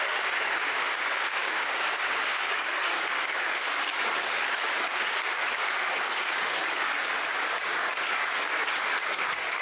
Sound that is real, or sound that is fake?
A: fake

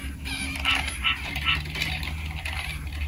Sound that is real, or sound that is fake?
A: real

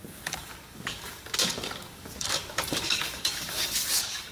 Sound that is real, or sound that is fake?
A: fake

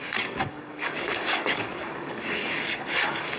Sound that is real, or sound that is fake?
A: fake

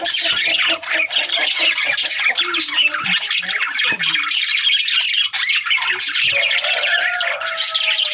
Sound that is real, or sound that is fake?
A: real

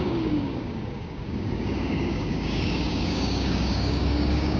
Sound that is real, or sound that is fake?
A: fake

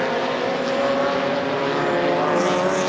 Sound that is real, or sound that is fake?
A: real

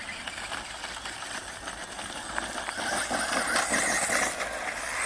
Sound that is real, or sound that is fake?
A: real